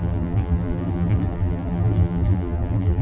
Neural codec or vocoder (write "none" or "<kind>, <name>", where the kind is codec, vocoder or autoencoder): vocoder, BigVGAN v2